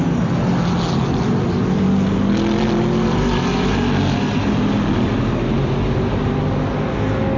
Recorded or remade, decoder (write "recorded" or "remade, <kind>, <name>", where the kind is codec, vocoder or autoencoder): recorded